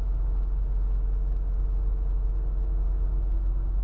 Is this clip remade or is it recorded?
recorded